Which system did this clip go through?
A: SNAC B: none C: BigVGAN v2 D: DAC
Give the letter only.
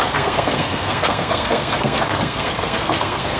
A